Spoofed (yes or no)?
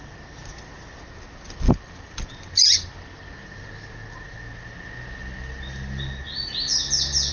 no